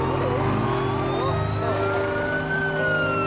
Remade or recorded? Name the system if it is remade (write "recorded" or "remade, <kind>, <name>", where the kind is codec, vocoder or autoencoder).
recorded